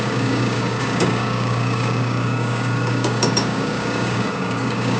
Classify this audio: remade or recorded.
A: remade